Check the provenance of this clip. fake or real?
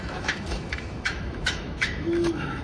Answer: fake